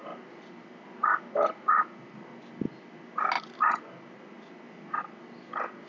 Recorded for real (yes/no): yes